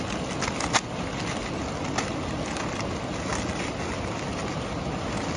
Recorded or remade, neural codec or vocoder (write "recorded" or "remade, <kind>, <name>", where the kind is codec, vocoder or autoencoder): recorded